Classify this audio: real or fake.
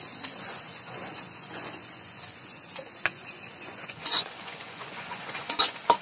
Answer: fake